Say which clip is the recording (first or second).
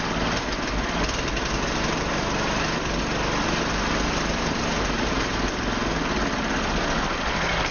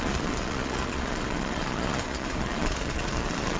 first